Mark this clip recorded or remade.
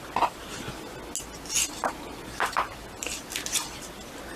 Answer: recorded